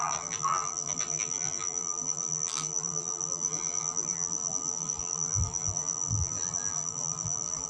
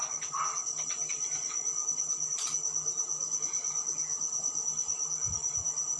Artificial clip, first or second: first